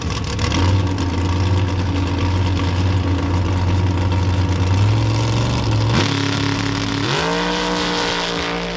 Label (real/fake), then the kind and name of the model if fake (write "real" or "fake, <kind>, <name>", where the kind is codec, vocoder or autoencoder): real